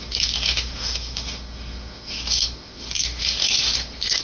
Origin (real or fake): fake